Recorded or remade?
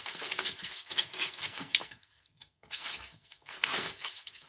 remade